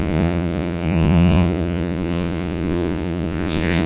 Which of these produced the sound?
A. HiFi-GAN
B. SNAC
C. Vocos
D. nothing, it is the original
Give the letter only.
C